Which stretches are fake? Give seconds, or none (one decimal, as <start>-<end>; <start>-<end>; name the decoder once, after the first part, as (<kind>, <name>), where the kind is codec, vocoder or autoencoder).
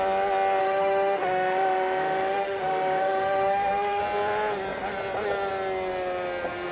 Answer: 0.6-4.0 (autoencoder, DAC-VAE)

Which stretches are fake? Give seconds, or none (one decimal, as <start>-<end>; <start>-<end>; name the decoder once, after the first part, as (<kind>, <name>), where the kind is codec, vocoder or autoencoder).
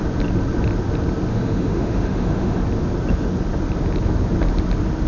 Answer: 1.3-2.6 (autoencoder, DAC-VAE)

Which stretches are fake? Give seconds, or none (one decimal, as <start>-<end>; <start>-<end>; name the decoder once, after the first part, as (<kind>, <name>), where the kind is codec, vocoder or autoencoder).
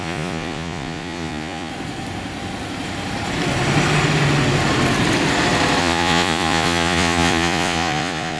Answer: 0.0-1.7 (vocoder, Vocos); 5.8-8.4